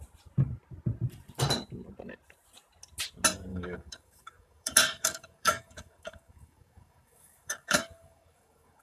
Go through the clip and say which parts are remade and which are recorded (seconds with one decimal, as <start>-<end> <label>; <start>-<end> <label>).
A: 0.0-3.5 recorded; 3.5-8.8 remade